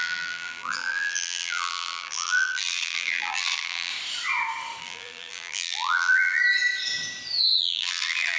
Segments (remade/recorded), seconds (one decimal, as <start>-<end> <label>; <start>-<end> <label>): 0.0-3.9 remade; 3.9-4.8 recorded; 4.8-6.4 remade; 6.4-7.6 recorded; 7.6-8.4 remade